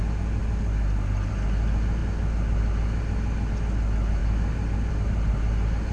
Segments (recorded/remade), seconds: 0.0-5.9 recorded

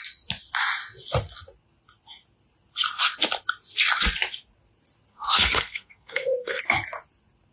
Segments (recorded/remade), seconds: 0.0-5.1 recorded; 5.1-6.6 remade; 6.6-7.5 recorded